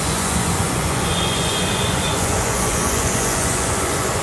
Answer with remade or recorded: remade